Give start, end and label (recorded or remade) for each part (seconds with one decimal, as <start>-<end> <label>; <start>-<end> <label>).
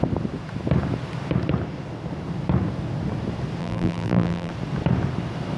0.0-3.6 recorded; 3.6-4.5 remade; 4.5-5.6 recorded